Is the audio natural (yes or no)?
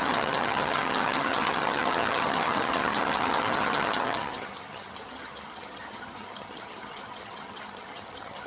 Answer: no